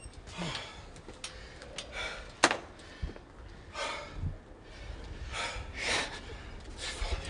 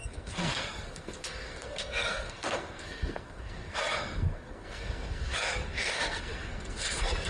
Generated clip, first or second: second